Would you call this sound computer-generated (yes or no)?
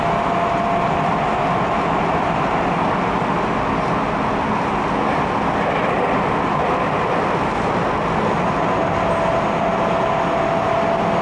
no